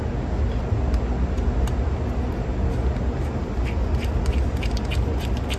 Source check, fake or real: real